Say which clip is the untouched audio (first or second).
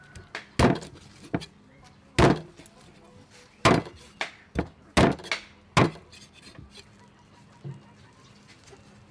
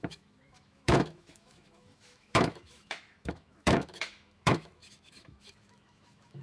first